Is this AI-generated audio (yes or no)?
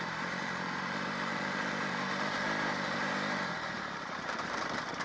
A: yes